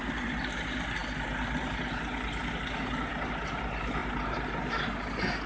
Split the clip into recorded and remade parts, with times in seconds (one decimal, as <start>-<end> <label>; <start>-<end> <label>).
0.0-3.1 recorded; 3.1-3.6 remade; 3.6-4.0 recorded; 4.0-4.6 remade; 4.6-5.5 recorded